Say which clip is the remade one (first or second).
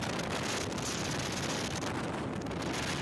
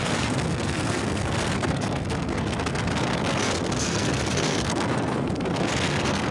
second